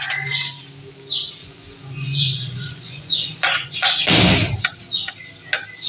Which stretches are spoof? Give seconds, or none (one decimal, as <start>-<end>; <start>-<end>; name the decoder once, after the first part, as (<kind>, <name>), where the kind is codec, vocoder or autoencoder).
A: 1.4-4.1 (vocoder, Vocos)